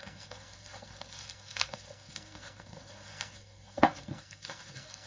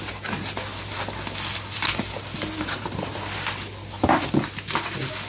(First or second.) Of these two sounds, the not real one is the first